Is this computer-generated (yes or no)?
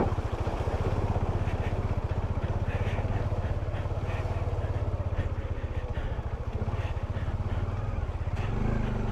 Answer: no